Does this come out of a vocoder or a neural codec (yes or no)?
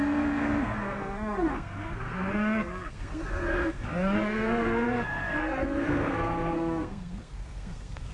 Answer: yes